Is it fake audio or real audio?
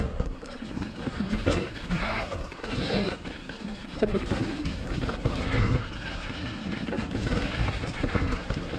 fake